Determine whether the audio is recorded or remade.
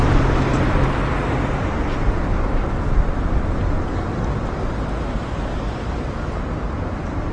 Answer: recorded